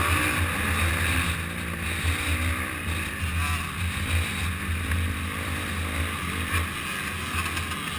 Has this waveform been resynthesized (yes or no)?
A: no